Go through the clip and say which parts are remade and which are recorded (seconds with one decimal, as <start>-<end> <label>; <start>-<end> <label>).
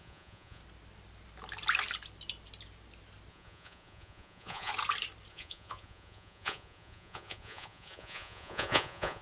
0.0-0.6 remade; 0.6-3.3 recorded; 3.3-4.7 remade; 4.7-5.3 recorded; 5.3-9.2 remade